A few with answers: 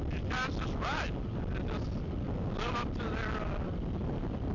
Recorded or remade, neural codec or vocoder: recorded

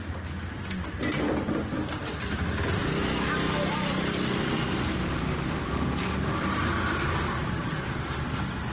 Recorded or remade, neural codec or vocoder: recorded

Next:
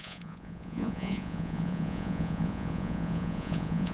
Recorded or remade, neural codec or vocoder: remade, vocoder, Vocos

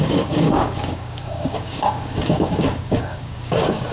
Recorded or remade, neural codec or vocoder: remade, codec, DAC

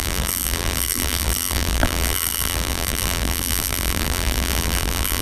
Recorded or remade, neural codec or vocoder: remade, vocoder, BigVGAN v2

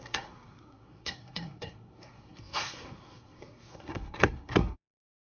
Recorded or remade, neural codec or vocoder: remade, codec, SNAC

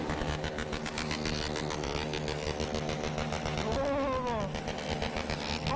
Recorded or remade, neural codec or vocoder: recorded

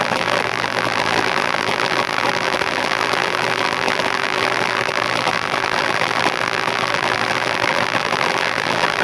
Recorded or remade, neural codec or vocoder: remade, vocoder, BigVGAN v2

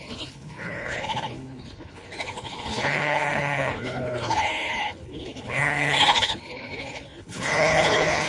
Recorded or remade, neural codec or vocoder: remade, codec, HILCodec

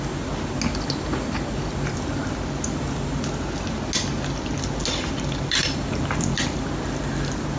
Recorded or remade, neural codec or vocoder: recorded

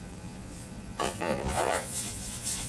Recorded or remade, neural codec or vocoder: remade, vocoder, Vocos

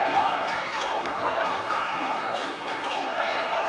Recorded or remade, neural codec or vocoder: remade, codec, SNAC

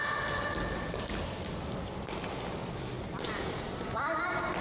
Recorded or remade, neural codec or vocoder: recorded